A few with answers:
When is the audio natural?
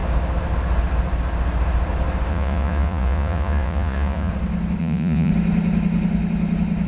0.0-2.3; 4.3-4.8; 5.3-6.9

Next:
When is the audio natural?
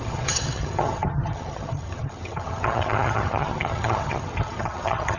none